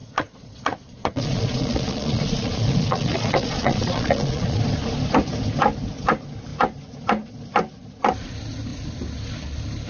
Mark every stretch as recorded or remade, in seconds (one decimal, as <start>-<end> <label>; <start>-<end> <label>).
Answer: 0.0-4.6 remade; 4.6-9.9 recorded